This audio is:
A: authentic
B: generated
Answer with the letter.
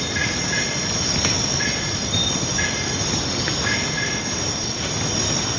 A